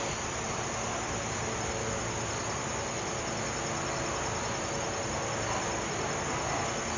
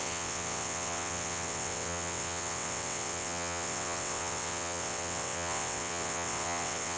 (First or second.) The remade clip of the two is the second